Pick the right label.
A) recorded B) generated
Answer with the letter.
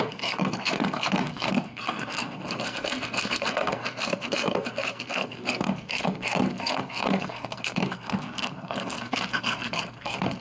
B